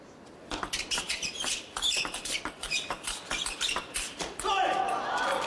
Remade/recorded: remade